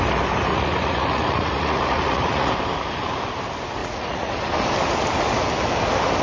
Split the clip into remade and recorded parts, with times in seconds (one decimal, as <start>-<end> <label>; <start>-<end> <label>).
0.0-0.5 recorded; 0.5-2.5 remade; 2.5-3.8 recorded; 3.8-4.3 remade; 4.3-6.2 recorded

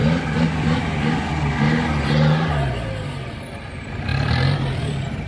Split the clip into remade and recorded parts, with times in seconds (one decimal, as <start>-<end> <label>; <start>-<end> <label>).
0.0-5.3 recorded

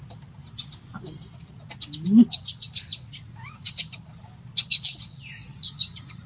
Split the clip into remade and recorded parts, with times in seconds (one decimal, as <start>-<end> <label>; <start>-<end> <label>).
0.0-3.1 recorded; 3.1-3.7 remade; 3.7-5.5 recorded; 5.5-6.3 remade

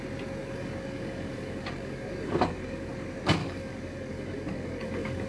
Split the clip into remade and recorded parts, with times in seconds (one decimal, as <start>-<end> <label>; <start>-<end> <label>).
0.0-0.4 recorded; 0.4-2.9 remade; 2.9-3.4 recorded; 3.4-5.3 remade

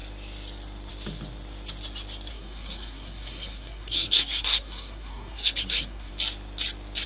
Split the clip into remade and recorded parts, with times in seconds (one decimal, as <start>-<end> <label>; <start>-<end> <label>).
0.0-2.3 recorded; 2.3-6.1 remade; 6.1-7.1 recorded

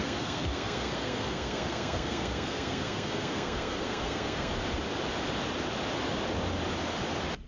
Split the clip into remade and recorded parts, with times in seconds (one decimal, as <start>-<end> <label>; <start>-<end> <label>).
0.0-4.5 remade; 4.5-7.5 recorded

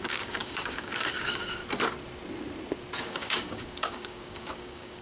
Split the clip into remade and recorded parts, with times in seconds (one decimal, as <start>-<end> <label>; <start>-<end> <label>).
0.0-1.6 remade; 1.6-3.0 recorded; 3.0-5.0 remade